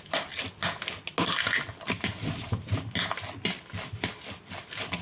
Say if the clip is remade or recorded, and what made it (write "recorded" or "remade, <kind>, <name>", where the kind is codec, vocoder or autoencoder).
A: recorded